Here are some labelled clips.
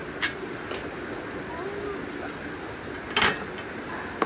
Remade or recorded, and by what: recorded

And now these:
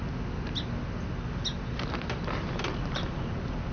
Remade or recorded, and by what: recorded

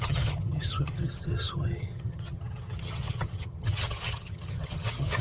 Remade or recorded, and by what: remade, vocoder, HiFi-GAN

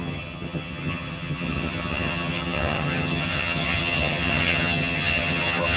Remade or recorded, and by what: remade, vocoder, HiFi-GAN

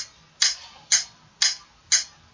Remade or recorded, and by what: recorded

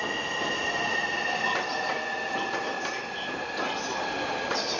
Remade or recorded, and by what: recorded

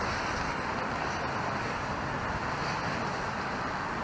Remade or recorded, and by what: recorded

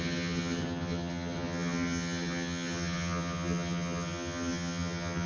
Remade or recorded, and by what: remade, vocoder, HiFi-GAN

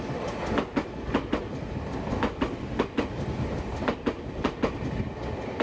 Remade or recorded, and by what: recorded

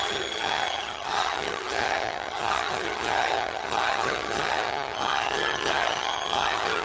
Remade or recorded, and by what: remade, vocoder, HiFi-GAN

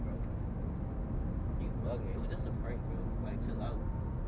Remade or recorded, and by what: recorded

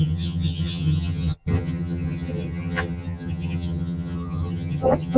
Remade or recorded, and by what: remade, vocoder, HiFi-GAN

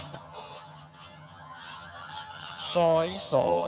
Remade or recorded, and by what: remade, vocoder, HiFi-GAN